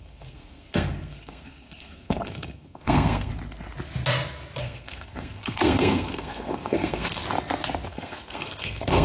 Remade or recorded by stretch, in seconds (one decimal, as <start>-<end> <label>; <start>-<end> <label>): 0.0-3.3 remade; 3.3-4.6 recorded; 4.6-7.2 remade; 7.2-7.9 recorded; 7.9-9.0 remade